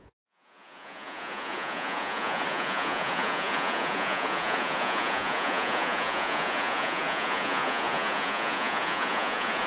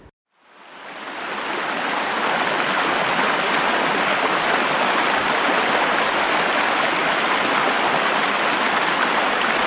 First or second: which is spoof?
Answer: first